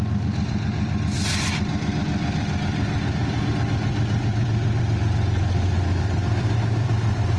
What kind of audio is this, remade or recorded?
remade